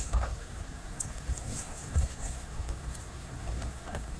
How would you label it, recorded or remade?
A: remade